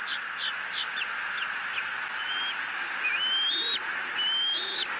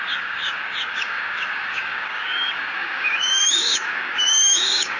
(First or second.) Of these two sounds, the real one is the first